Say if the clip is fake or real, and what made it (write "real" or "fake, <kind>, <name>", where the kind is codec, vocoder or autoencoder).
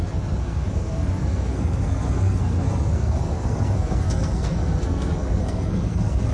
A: fake, codec, SNAC